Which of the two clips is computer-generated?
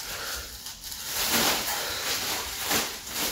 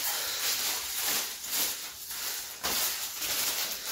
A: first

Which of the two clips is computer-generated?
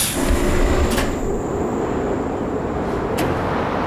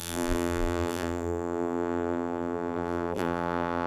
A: second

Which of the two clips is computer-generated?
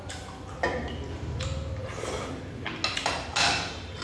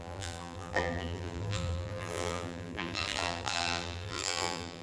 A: second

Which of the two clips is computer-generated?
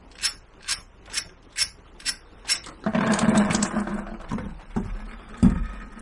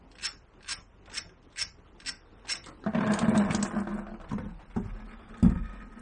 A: first